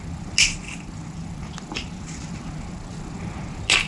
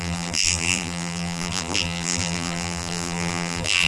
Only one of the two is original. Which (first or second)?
first